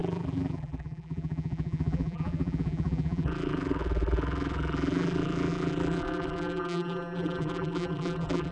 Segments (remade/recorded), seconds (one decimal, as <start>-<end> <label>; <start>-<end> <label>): 0.0-8.5 remade